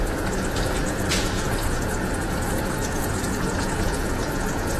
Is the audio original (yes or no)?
no